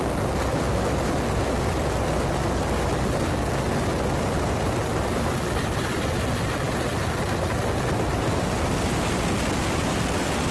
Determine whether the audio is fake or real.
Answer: real